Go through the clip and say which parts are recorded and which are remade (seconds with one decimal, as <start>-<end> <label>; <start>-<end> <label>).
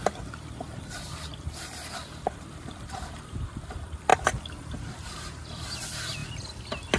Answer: 0.0-4.1 remade; 4.1-5.8 recorded; 5.8-6.2 remade; 6.2-7.0 recorded